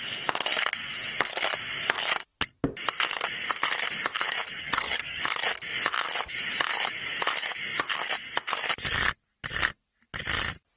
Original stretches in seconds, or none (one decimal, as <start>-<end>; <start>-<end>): 0.0-4.6; 5.2-10.8